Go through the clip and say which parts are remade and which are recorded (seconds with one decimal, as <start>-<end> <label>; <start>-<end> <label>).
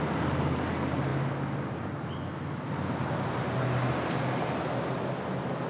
0.0-5.7 recorded